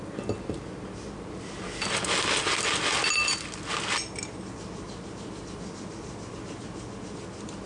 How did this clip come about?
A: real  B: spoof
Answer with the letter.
A